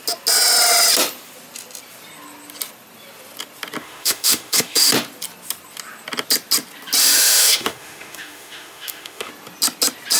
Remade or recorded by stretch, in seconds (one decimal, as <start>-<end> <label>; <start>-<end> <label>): 0.0-3.8 recorded; 3.8-4.9 remade; 4.9-7.0 recorded; 7.0-9.3 remade; 9.3-10.2 recorded